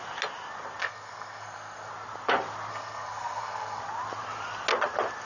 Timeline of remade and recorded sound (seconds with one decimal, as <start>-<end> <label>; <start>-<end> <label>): 0.0-0.8 recorded; 0.8-1.9 remade; 1.9-2.7 recorded; 2.7-3.8 remade; 3.8-5.3 recorded